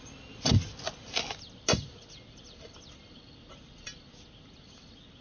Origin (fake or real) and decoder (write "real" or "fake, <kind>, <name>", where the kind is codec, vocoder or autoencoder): real